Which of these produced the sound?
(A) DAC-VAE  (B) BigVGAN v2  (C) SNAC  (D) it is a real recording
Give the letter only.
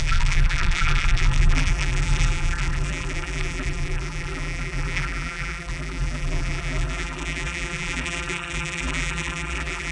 B